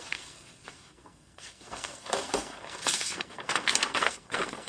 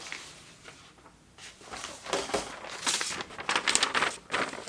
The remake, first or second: first